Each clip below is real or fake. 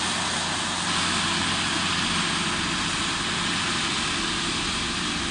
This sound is real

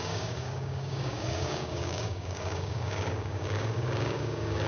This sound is fake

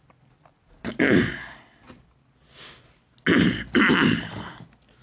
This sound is real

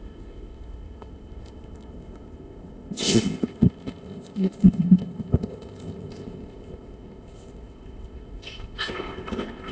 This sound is fake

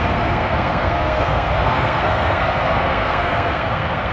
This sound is fake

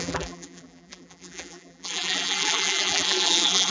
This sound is fake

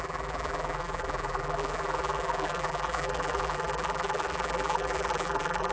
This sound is fake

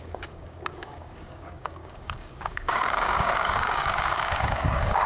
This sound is fake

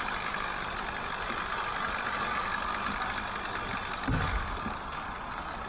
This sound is real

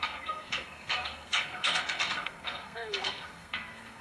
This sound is fake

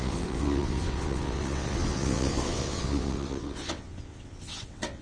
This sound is fake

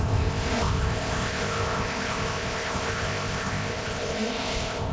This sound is fake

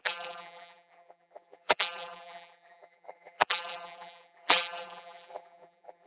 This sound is fake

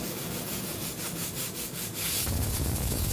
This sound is fake